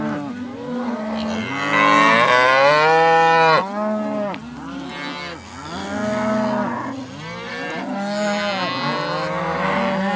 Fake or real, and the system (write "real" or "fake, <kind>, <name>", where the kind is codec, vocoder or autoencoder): real